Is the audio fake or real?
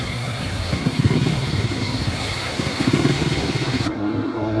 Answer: fake